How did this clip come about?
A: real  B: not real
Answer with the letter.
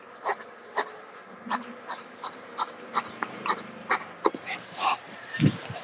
A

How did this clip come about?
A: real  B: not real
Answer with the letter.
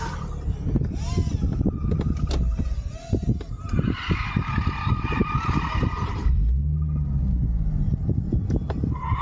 A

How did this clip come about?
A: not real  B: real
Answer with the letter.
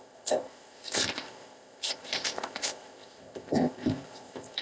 A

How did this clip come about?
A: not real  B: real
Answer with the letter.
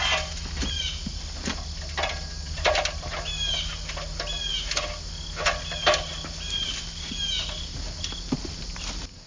B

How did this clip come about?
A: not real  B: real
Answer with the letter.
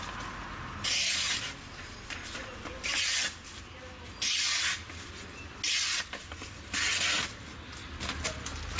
B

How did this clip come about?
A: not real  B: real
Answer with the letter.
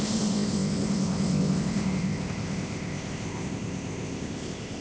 A